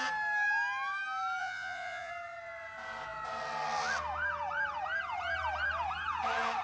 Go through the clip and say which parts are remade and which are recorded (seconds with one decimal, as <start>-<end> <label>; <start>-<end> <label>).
0.0-1.4 recorded; 1.4-2.1 remade; 2.1-6.6 recorded